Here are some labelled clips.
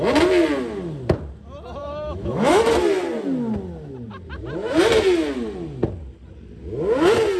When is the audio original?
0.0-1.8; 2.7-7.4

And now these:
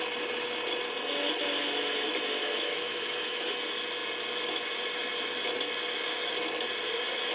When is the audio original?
0.0-2.4; 3.5-7.3

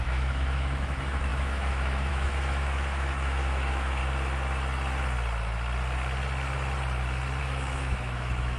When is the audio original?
4.0-7.4

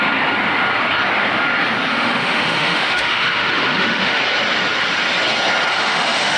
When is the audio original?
0.0-1.9; 4.2-5.7

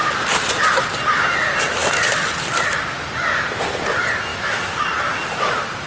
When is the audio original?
0.0-4.3; 4.8-5.9